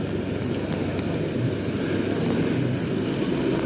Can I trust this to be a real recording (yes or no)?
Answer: yes